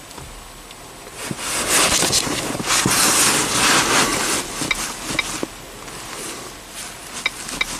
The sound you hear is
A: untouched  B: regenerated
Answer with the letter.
A